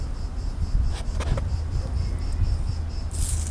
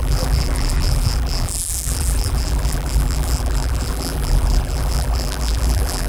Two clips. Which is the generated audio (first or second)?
second